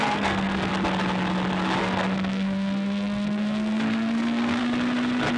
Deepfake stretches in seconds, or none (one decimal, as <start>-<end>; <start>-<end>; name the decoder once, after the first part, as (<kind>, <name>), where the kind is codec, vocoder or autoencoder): 0.0-0.7 (codec, SNAC); 1.8-4.6